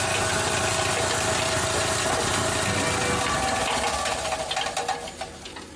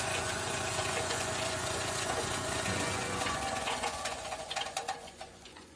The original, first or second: first